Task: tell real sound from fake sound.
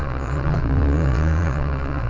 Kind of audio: fake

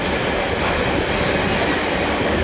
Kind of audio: real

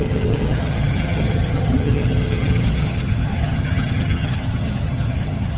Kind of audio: fake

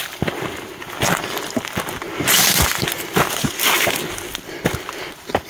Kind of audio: real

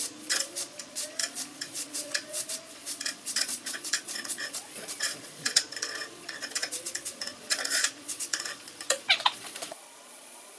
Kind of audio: fake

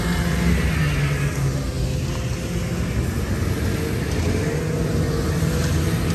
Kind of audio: real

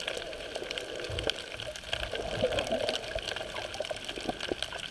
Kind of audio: real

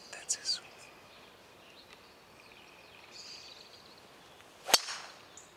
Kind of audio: real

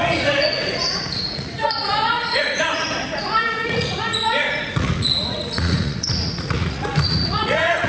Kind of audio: fake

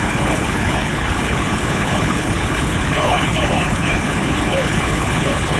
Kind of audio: fake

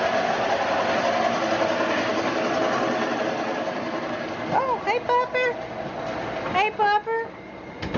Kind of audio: real